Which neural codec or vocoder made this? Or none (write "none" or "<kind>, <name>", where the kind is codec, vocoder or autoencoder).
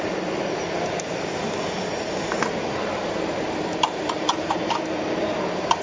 vocoder, BigVGAN v2